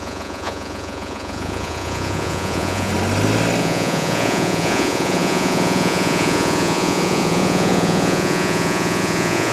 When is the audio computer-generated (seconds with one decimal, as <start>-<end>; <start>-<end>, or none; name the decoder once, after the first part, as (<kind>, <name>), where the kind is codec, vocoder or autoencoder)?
0.0-2.9 (vocoder, Vocos); 3.6-9.5